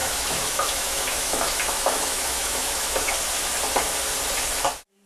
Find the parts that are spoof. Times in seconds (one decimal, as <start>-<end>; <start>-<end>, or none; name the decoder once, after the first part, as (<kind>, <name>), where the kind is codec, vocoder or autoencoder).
0.0-3.1 (autoencoder, DAC-VAE)